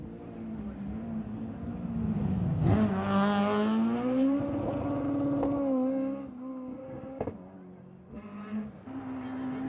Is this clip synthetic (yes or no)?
no